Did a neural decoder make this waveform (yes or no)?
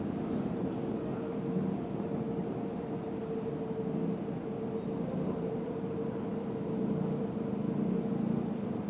no